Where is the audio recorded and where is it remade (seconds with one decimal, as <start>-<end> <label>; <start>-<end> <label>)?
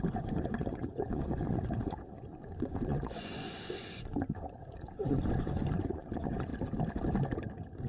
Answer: 0.0-6.5 remade; 6.5-7.9 recorded